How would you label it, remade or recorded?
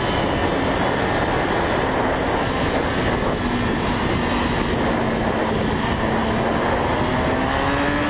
recorded